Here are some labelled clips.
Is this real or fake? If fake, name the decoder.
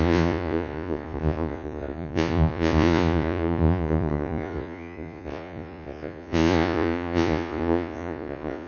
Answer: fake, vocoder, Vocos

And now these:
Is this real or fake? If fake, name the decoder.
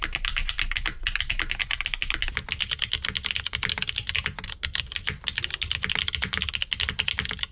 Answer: real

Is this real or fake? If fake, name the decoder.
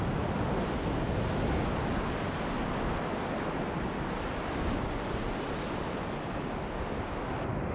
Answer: real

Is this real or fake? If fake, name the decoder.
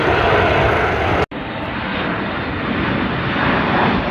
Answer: real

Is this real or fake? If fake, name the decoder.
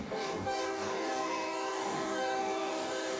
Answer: fake, codec, DAC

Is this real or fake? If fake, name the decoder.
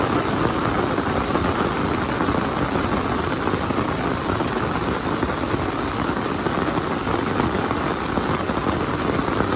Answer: real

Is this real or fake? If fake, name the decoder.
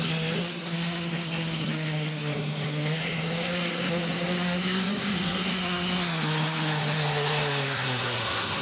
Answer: fake, codec, SNAC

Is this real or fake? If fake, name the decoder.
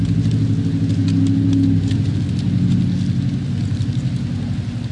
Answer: real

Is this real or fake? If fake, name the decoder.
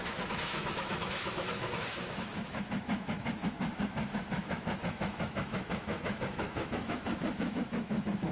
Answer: fake, autoencoder, DAC-VAE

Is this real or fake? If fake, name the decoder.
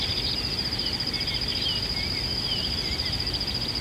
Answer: real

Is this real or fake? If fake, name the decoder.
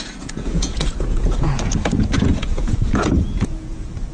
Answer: fake, vocoder, Vocos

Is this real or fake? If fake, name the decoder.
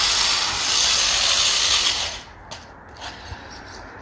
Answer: real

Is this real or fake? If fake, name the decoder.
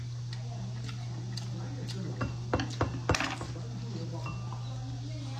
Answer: real